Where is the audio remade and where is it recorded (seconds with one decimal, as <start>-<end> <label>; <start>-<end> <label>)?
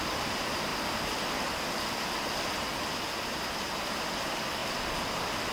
0.0-4.6 recorded; 4.6-5.5 remade